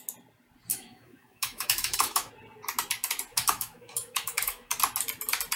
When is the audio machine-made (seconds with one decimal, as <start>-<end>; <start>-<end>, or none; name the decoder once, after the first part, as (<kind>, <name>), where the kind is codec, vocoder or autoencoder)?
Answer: 0.7-2.3 (autoencoder, DAC-VAE); 3.3-4.7